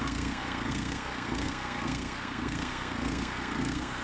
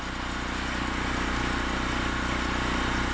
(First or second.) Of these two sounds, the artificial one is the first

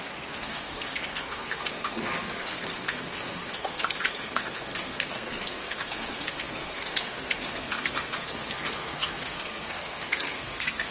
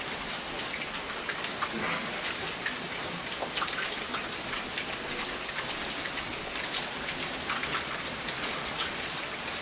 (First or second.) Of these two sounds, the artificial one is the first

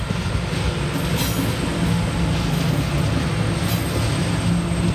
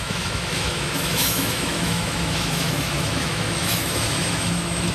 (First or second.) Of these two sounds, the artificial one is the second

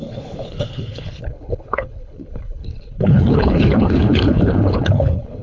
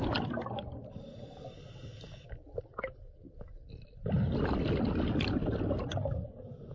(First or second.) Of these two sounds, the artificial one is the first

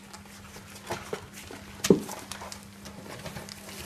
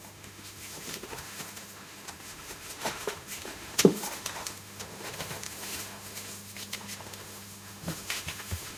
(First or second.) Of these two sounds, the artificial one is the second